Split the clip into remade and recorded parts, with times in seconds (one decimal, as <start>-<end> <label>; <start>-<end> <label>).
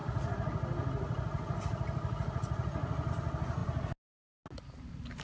0.0-5.2 recorded